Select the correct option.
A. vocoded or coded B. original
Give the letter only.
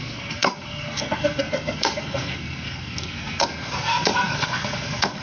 A